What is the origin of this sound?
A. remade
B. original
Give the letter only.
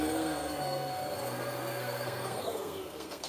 A